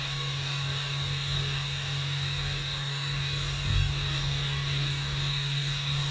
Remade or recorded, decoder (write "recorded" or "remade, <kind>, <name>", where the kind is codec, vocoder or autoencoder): remade, codec, DAC